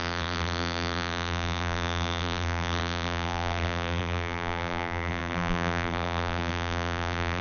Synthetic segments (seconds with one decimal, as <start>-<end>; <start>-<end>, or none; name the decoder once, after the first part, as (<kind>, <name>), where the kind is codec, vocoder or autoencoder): 0.0-7.4 (vocoder, BigVGAN v2)